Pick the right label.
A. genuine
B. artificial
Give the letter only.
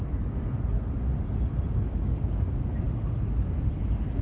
A